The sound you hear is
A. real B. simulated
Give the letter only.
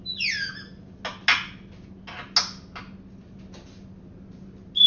A